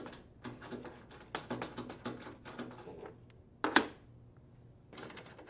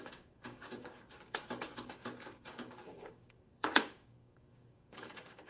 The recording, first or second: first